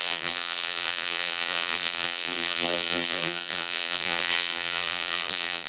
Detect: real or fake fake